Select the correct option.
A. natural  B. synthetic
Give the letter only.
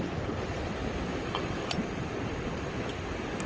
A